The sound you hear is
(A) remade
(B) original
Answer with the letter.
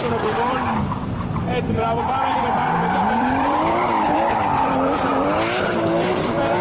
A